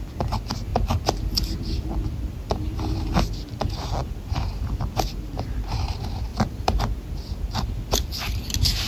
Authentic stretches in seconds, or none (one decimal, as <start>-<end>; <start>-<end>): 0.0-6.3; 6.8-8.9